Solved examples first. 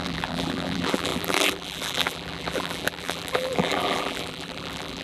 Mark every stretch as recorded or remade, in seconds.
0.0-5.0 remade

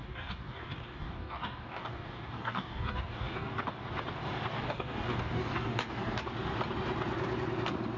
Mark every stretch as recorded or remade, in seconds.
0.0-3.6 remade; 3.6-4.5 recorded; 4.5-6.2 remade; 6.2-8.0 recorded

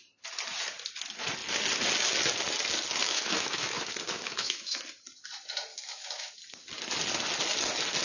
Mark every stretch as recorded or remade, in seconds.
0.0-3.0 recorded; 3.0-4.8 remade; 4.8-5.7 recorded; 5.7-6.3 remade; 6.3-8.0 recorded